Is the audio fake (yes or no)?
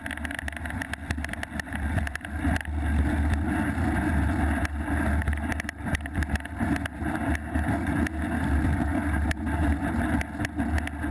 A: no